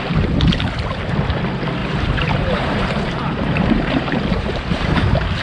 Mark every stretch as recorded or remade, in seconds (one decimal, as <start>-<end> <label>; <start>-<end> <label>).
0.0-1.8 recorded; 1.8-5.0 remade; 5.0-5.4 recorded